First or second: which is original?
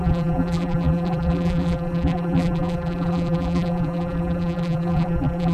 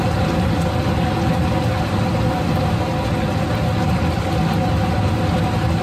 second